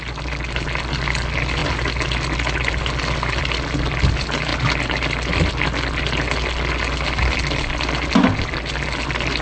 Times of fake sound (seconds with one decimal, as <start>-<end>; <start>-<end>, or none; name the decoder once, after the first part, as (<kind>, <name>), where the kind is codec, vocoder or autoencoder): none

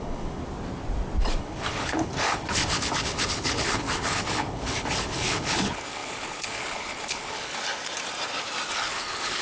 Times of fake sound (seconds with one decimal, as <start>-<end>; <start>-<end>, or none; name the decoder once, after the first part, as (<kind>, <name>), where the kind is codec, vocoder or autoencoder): 0.0-0.4 (codec, HILCodec); 1.4-7.5; 8.7-9.4

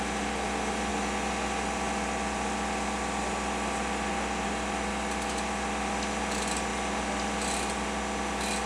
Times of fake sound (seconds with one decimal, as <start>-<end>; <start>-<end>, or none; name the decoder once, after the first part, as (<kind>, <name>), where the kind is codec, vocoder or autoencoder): none

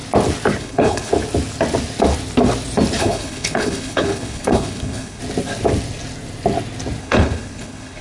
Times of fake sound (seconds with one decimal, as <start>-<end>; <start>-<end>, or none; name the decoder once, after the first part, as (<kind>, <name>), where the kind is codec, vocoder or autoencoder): 0.6-1.1 (codec, HILCodec); 3.0-5.2; 7.0-8.0

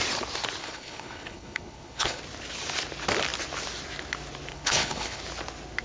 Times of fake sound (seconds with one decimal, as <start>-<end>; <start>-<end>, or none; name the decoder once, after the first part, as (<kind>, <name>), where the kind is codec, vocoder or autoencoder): 0.6-2.2 (codec, HILCodec); 4.5-5.2